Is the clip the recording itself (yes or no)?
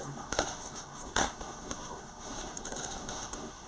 no